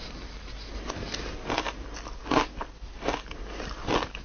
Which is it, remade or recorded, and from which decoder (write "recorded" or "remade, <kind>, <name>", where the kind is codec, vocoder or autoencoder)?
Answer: recorded